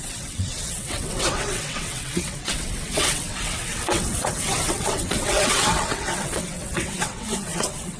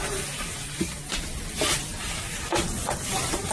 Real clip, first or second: second